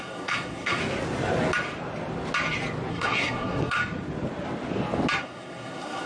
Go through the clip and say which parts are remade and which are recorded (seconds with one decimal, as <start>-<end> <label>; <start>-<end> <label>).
0.0-0.8 remade; 0.8-2.9 recorded; 2.9-3.8 remade; 3.8-5.2 recorded; 5.2-6.1 remade